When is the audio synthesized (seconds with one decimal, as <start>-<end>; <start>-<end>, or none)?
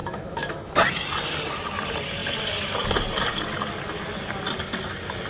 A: 0.0-0.7